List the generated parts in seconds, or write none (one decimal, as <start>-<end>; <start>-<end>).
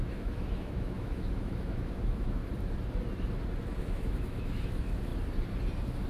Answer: 0.0-2.4; 3.8-5.1